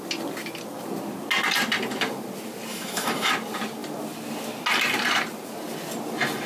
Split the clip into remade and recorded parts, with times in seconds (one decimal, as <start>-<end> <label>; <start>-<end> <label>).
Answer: 0.0-2.7 recorded; 2.7-3.3 remade; 3.3-6.5 recorded